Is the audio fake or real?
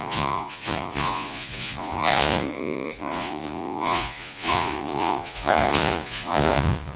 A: fake